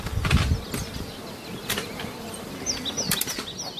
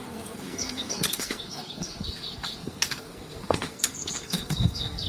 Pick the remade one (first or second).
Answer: second